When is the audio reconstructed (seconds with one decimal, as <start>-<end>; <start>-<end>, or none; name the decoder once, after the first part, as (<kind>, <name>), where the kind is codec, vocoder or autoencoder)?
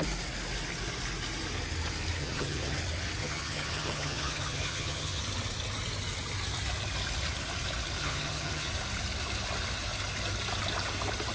2.2-2.8 (vocoder, HiFi-GAN); 3.2-5.2; 8.0-8.7